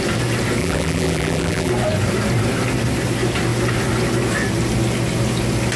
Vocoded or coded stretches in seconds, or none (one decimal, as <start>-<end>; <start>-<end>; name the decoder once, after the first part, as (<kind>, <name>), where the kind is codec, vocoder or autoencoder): 0.6-1.7 (vocoder, BigVGAN v2)